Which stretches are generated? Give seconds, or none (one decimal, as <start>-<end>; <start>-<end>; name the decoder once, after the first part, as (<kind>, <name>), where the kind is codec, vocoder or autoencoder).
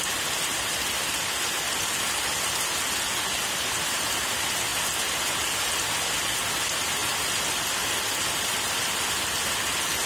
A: none